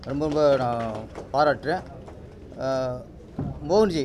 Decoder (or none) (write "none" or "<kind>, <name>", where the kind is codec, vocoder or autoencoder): none